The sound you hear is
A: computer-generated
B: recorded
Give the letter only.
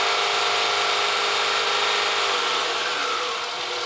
B